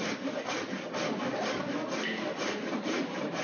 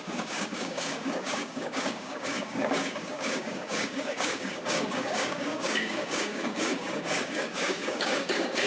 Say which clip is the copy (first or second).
second